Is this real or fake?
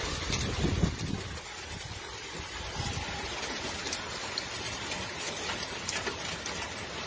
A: real